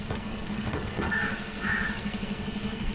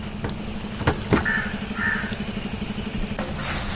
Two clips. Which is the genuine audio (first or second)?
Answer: second